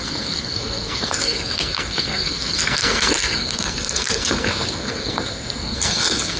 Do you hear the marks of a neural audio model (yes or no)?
yes